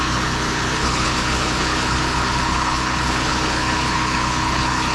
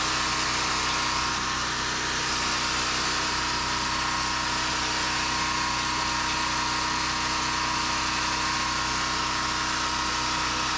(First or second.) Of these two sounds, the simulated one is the first